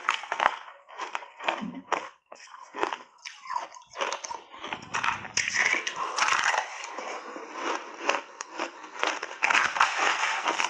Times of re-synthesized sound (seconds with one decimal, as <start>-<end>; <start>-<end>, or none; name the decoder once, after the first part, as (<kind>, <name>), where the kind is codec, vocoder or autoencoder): 0.0-3.2 (codec, SNAC); 8.0-10.7